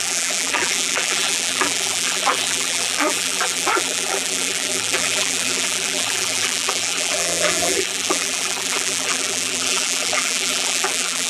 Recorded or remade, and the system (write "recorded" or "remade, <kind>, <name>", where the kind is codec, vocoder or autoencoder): remade, vocoder, BigVGAN v2